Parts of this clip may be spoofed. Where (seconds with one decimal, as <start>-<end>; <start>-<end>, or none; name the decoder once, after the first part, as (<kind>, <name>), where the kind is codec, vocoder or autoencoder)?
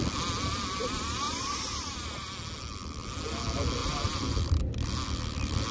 0.8-2.3 (vocoder, BigVGAN v2); 3.8-4.6